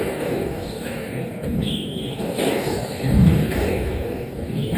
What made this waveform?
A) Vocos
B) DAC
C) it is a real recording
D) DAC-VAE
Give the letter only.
B